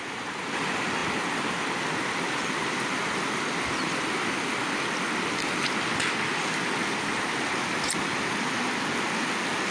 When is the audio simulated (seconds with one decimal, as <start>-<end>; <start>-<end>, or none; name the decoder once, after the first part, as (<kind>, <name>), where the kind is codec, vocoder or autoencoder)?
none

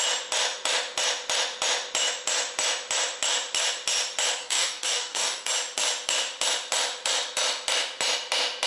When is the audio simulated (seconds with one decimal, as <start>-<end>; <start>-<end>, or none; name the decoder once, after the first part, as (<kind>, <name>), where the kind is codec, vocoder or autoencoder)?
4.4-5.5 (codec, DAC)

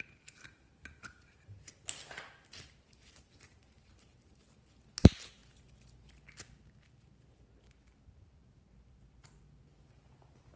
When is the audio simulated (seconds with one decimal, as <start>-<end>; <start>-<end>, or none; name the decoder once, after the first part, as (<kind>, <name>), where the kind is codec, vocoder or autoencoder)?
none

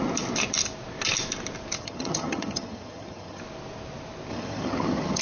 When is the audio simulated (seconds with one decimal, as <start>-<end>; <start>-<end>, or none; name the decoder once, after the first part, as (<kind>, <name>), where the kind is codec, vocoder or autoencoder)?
1.8-3.4 (vocoder, HiFi-GAN); 4.3-5.2

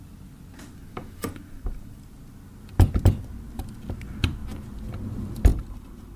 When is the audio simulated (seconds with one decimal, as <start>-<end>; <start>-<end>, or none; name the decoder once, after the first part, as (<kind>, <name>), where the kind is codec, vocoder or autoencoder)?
0.8-2.0 (vocoder, BigVGAN v2); 5.5-6.2

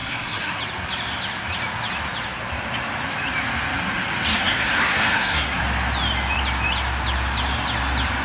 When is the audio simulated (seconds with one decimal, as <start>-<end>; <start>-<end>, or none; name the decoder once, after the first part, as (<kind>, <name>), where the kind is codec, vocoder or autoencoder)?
0.0-0.6 (codec, SNAC); 4.3-5.6